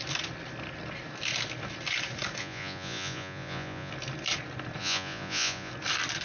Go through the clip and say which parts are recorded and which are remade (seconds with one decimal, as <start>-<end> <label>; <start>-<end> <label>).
0.0-2.4 recorded; 2.4-3.9 remade; 3.9-4.8 recorded; 4.8-5.7 remade; 5.7-6.2 recorded